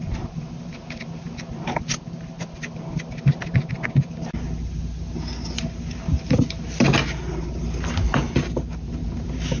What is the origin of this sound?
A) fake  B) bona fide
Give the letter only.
B